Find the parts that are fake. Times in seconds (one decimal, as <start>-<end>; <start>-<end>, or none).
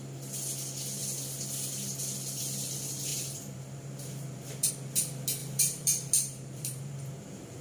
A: 3.1-4.7; 5.4-7.6